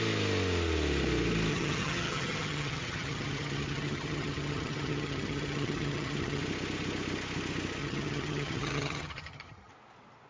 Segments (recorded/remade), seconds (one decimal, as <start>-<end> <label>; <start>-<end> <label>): 0.0-1.5 recorded; 1.5-6.4 remade; 6.4-7.8 recorded; 7.8-9.7 remade; 9.7-10.3 recorded